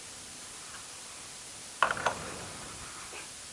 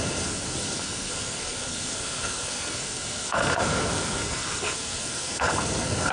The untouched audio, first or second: first